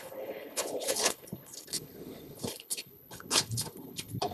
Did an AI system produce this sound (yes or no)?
yes